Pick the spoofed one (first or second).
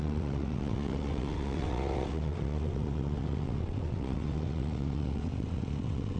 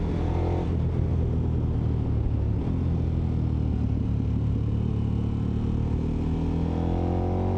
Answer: first